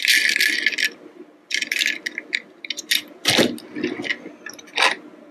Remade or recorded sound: recorded